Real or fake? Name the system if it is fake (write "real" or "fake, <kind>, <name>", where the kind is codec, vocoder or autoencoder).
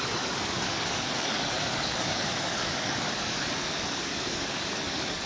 fake, codec, DAC